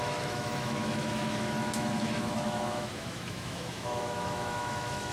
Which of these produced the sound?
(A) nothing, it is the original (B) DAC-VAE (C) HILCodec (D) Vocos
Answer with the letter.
B